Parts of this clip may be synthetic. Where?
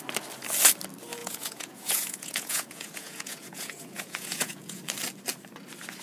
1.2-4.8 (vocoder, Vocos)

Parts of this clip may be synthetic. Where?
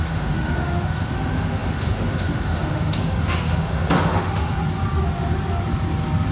0.0-4.6 (autoencoder, DAC-VAE)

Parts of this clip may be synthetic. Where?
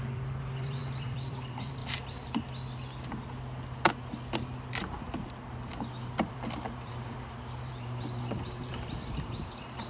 0.0-1.8 (vocoder, BigVGAN v2); 6.1-9.9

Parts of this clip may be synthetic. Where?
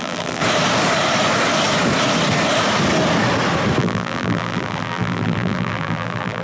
0.0-0.4 (vocoder, BigVGAN v2); 3.8-6.4